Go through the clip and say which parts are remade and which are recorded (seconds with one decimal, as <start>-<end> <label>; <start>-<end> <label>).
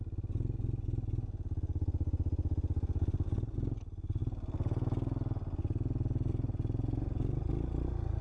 0.0-8.2 recorded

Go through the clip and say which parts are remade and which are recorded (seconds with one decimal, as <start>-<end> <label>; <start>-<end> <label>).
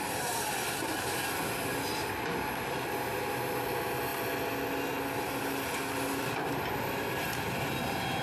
0.0-8.2 recorded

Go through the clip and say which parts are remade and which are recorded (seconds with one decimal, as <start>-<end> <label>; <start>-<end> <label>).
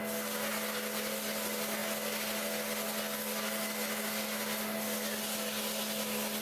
0.0-6.4 recorded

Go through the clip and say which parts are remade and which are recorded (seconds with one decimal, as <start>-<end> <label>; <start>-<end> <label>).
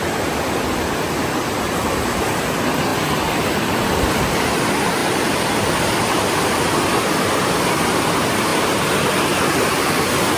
0.0-2.9 recorded; 2.9-3.7 remade; 3.7-10.4 recorded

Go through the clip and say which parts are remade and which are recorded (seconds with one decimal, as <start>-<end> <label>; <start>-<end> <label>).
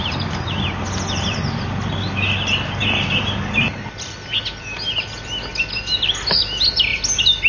0.0-7.5 recorded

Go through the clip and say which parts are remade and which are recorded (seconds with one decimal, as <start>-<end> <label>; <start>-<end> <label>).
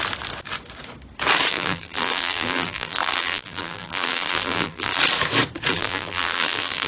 0.0-1.5 recorded; 1.5-5.0 remade; 5.0-5.7 recorded; 5.7-6.9 remade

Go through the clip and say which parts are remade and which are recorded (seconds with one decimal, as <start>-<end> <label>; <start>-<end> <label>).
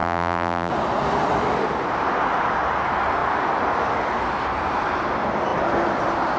0.0-0.7 remade; 0.7-6.4 recorded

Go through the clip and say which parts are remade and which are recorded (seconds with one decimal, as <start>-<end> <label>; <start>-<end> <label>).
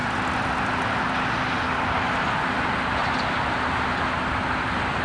0.0-3.0 recorded; 3.0-4.0 remade; 4.0-5.0 recorded